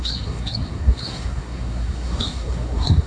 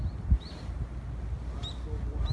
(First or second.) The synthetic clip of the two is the first